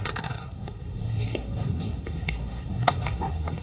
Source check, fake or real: fake